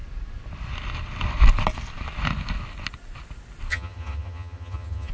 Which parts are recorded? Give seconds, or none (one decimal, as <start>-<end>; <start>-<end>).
0.0-3.7